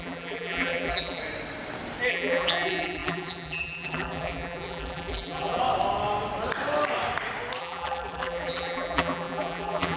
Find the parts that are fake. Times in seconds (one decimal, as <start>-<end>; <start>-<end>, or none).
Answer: 0.0-1.2; 2.1-5.6; 7.6-10.0